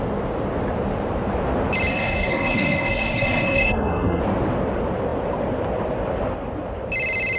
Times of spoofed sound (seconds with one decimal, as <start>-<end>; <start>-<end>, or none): 1.9-4.2